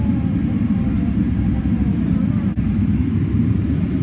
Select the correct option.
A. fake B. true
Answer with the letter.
A